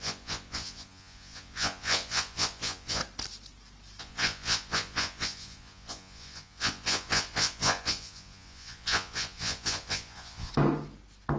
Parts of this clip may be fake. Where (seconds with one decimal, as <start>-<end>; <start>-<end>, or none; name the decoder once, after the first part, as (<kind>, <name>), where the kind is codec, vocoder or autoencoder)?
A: 0.0-3.0 (vocoder, Vocos); 4.0-10.5